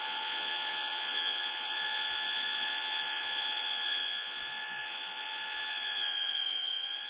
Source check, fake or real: fake